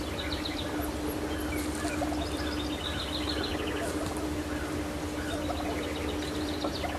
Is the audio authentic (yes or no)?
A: yes